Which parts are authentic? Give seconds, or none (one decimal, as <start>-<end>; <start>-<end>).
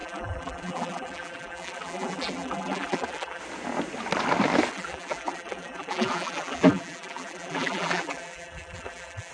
3.4-4.7